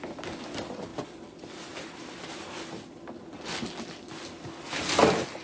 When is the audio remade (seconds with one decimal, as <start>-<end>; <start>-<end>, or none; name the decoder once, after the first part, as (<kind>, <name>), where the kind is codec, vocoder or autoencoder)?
none